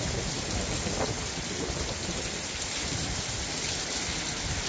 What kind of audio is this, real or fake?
real